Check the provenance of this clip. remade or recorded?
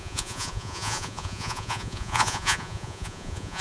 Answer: remade